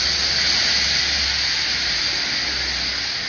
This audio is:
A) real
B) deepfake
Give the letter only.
A